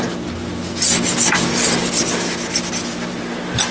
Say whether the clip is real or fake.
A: real